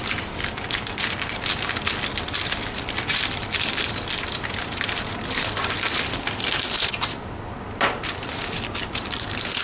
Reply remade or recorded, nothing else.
remade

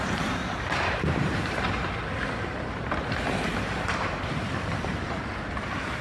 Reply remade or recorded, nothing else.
remade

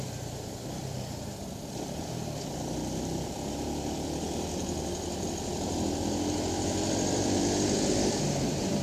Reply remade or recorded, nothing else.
remade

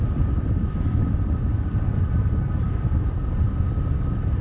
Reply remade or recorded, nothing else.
recorded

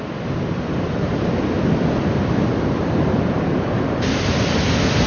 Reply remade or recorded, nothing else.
recorded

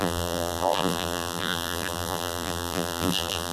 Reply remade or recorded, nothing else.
remade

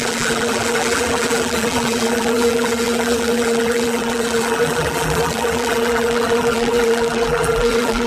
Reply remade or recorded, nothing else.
remade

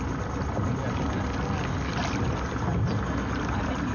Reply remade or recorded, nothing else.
recorded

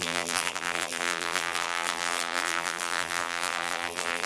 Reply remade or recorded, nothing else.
remade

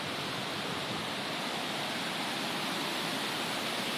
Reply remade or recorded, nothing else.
recorded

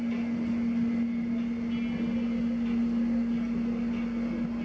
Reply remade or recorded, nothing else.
recorded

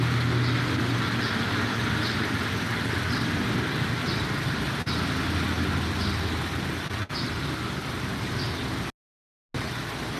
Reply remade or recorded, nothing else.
recorded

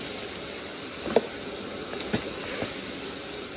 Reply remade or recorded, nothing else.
recorded